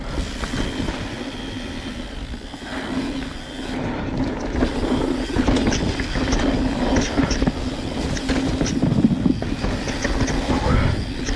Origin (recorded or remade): recorded